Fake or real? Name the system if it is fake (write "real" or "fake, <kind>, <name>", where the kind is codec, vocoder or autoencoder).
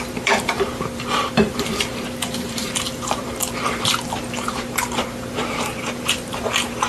fake, vocoder, BigVGAN v2